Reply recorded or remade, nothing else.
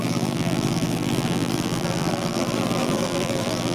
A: remade